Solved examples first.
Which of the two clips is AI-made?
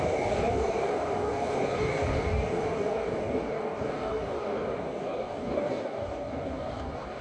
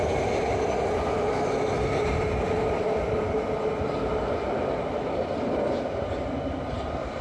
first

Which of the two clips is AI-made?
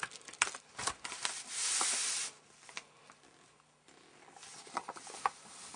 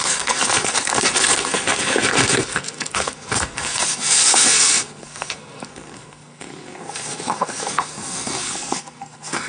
second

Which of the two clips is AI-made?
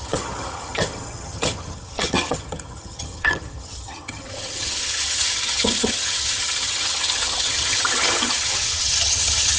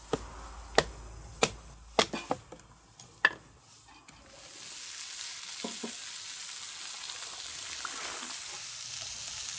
first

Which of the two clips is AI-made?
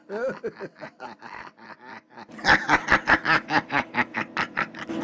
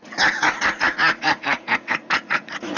second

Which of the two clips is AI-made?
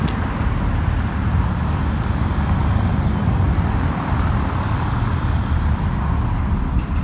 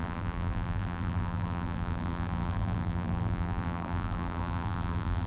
second